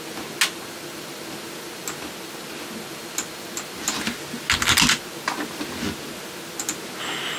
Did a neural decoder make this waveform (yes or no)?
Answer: no